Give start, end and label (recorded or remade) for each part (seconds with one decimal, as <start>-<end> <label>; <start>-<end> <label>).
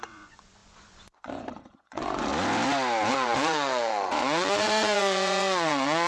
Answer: 0.0-2.3 remade; 2.3-3.1 recorded; 3.1-6.1 remade